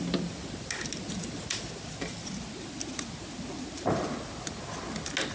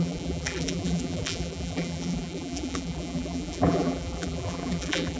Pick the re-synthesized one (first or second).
second